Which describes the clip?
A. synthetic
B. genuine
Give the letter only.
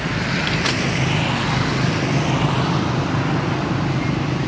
B